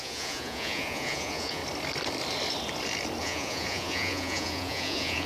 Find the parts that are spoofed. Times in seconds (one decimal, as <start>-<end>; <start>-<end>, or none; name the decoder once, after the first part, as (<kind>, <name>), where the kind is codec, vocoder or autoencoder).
0.0-1.6 (vocoder, Vocos); 3.2-5.3